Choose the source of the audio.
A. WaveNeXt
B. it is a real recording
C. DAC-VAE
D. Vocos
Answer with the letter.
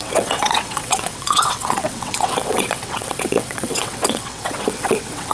A